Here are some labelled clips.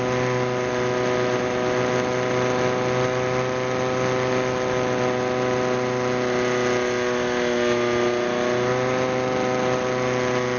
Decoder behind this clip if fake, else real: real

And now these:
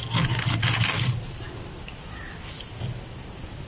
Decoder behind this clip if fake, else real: real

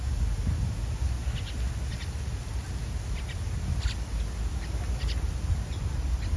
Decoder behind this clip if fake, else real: real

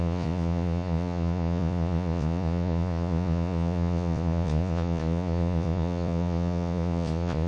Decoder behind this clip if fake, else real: fake, vocoder, Vocos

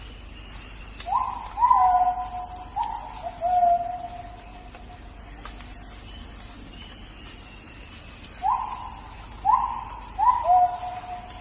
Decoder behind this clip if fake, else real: real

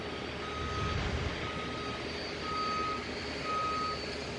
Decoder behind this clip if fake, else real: real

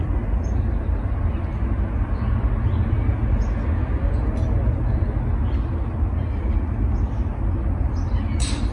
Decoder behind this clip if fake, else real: real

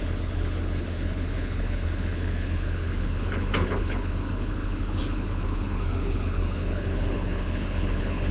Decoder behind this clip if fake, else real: fake, codec, HILCodec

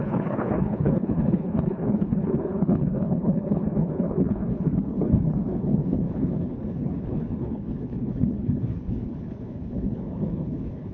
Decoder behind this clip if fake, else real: fake, codec, HILCodec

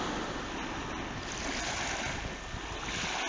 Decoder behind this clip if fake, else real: real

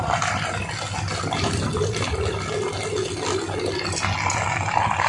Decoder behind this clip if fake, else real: real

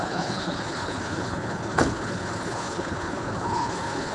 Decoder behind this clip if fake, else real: fake, codec, HILCodec